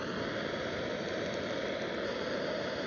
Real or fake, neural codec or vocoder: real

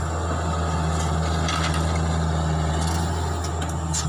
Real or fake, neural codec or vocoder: real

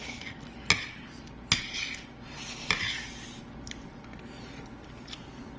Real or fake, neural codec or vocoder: real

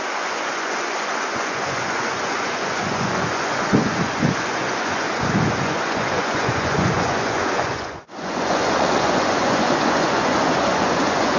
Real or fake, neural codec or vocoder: fake, vocoder, Vocos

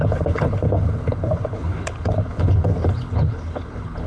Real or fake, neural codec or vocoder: fake, codec, HILCodec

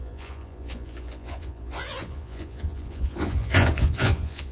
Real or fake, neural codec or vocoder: fake, vocoder, Vocos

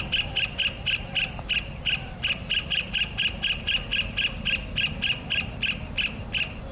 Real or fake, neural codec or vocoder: real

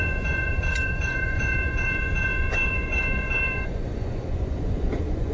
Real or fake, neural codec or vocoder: fake, vocoder, Vocos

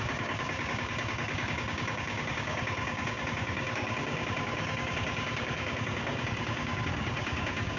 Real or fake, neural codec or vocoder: fake, codec, DAC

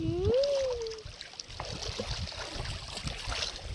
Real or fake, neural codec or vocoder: real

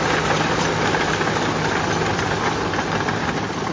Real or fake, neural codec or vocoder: real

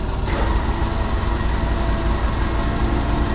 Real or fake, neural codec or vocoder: real